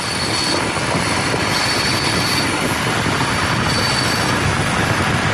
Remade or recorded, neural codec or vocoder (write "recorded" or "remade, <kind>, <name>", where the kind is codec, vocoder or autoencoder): recorded